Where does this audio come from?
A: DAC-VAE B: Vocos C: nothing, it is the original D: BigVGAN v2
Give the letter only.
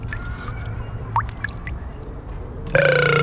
C